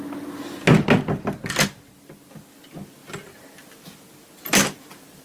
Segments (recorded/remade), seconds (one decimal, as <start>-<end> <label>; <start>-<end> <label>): 0.0-5.2 recorded